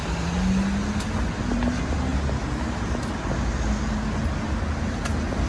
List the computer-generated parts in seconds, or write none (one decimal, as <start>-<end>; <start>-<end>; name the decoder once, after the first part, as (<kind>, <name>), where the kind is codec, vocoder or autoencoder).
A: none